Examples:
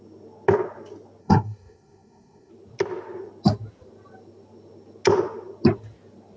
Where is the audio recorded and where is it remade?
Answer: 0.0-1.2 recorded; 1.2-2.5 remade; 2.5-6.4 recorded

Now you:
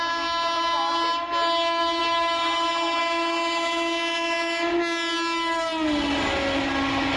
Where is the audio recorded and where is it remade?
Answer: 0.0-7.2 recorded

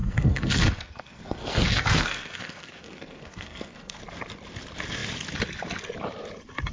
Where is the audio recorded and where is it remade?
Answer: 0.0-4.0 remade; 4.0-6.7 recorded

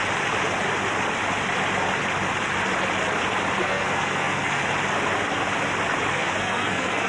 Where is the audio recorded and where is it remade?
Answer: 0.0-3.6 recorded; 3.6-4.6 remade; 4.6-6.1 recorded; 6.1-7.1 remade